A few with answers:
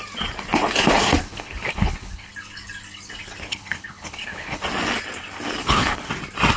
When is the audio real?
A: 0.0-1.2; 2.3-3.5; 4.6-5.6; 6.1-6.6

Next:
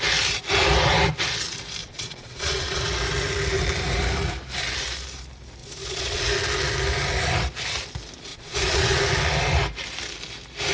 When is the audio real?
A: 0.0-1.8; 2.8-5.6; 6.2-8.3; 9.0-10.7

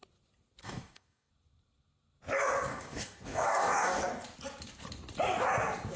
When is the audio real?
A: 0.0-0.6; 1.3-2.7; 4.0-6.0

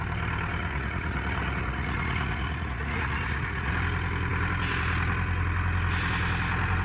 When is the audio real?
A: 0.0-0.6; 3.7-6.8

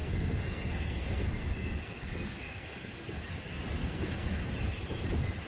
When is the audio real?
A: 3.3-3.8; 4.4-5.5